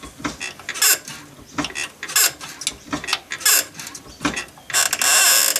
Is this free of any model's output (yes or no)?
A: yes